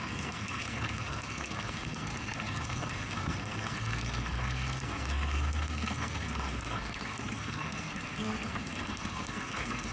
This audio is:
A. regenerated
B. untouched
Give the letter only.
A